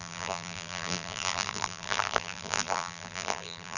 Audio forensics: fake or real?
fake